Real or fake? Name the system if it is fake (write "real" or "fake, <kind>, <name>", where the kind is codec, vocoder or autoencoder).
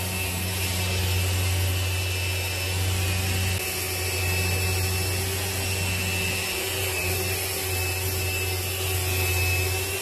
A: real